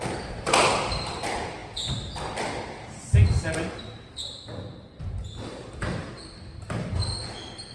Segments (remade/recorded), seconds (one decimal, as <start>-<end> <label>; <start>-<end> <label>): 0.0-1.6 remade; 1.6-5.0 recorded; 5.0-7.7 remade